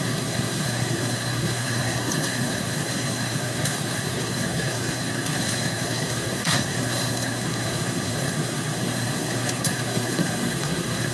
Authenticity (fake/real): fake